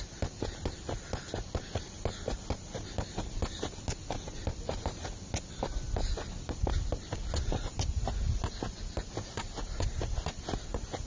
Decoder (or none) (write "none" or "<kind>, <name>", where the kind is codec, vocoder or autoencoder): none